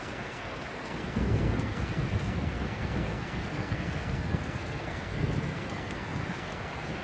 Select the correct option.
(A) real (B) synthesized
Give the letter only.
B